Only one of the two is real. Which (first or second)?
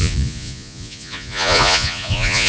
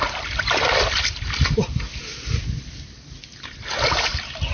second